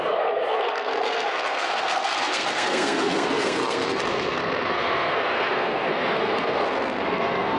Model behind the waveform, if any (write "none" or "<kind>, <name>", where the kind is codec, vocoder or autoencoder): codec, SNAC